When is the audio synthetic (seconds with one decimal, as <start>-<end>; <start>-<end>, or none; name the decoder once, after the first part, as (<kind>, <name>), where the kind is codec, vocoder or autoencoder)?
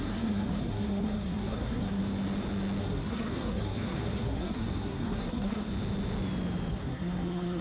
0.0-2.0 (codec, SNAC); 2.8-5.7; 6.7-7.6